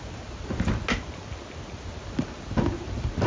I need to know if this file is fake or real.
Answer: real